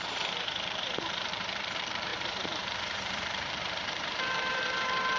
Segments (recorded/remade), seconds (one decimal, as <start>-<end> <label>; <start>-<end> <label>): 0.0-5.2 remade